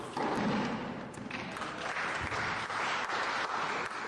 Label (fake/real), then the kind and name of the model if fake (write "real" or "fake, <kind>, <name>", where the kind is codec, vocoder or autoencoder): real